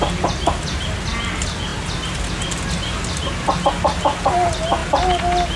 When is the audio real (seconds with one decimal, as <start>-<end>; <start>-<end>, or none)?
0.0-5.6